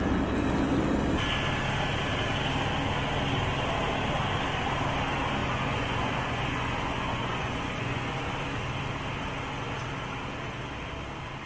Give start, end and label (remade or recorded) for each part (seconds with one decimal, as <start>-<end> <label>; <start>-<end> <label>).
0.0-5.4 recorded; 5.4-8.2 remade; 8.2-11.5 recorded